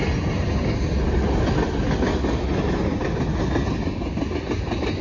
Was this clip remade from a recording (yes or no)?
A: no